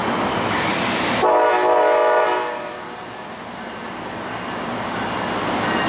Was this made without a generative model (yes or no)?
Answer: yes